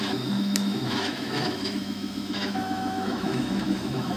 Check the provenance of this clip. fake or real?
fake